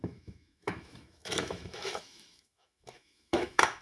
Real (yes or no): no